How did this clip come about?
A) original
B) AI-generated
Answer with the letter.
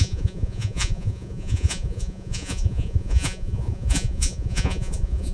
B